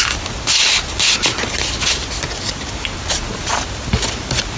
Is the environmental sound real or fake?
real